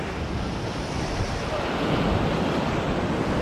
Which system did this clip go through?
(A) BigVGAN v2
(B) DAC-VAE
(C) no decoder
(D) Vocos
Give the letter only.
C